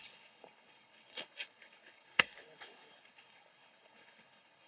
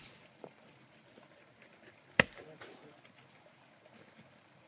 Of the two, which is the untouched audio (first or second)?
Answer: second